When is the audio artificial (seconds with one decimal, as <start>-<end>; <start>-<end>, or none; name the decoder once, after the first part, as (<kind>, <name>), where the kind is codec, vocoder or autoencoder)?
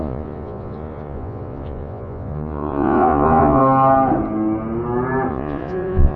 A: 0.0-3.6 (vocoder, Vocos); 5.3-6.2